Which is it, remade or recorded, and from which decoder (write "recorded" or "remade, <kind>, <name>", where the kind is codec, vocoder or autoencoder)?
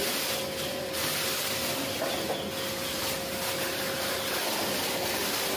recorded